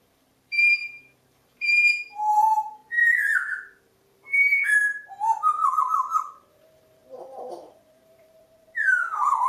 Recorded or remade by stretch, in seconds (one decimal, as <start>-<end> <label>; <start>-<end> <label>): 0.0-9.5 remade